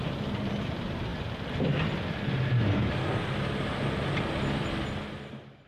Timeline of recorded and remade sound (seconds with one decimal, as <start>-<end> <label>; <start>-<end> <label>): 0.0-5.7 recorded